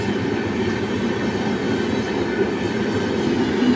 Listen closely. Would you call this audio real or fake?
real